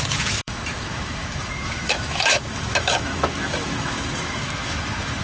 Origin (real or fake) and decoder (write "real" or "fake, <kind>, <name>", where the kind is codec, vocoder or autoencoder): fake, autoencoder, DAC-VAE